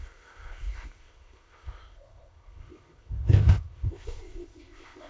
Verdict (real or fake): fake